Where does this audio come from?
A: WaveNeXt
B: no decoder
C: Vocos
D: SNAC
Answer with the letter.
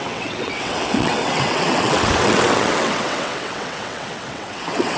A